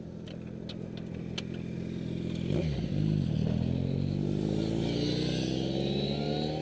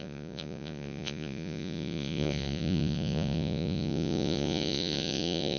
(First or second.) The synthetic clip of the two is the second